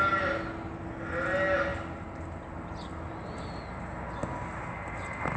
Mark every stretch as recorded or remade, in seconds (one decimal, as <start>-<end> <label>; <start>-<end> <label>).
0.0-5.4 recorded